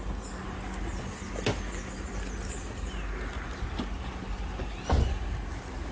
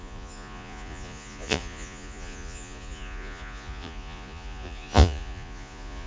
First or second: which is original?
first